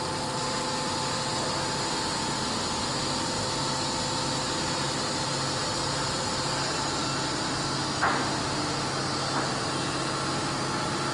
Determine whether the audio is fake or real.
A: real